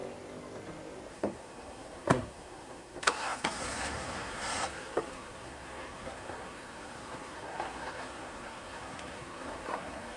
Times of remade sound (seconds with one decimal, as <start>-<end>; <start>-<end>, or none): 1.1-10.2